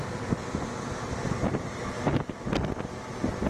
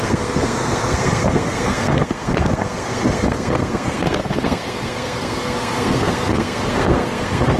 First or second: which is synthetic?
second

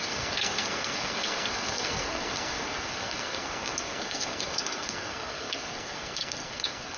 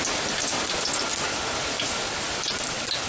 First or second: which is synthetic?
first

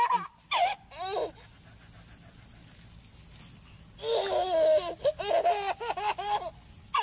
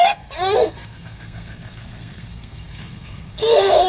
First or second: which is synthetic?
second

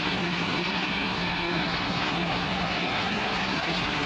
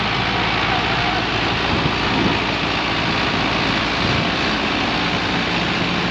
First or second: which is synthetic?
first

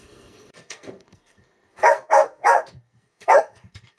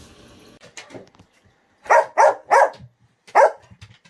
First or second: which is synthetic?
first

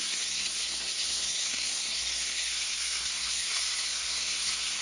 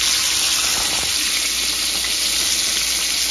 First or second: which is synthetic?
first